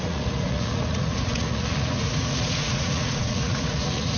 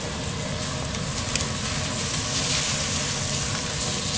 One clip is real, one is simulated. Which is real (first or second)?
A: second